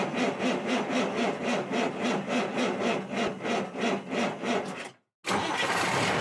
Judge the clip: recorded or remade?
recorded